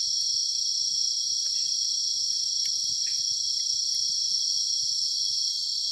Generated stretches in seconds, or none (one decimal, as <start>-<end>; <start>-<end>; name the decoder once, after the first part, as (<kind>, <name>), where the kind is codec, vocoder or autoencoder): none